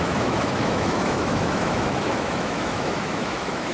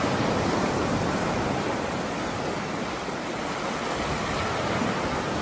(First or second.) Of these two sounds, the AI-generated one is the first